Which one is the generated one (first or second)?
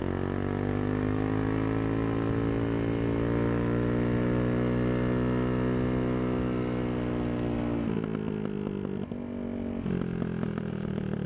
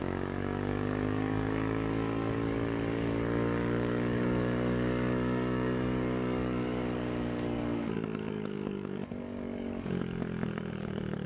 second